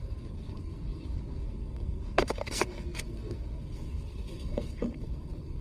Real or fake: fake